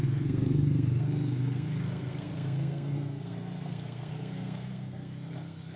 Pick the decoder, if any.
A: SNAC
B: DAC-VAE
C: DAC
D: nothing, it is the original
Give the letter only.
A